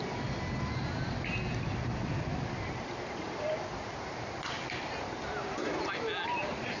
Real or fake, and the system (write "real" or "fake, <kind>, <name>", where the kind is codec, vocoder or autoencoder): real